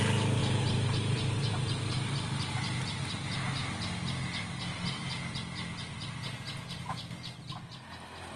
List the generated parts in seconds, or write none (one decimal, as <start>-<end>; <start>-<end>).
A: 0.4-3.0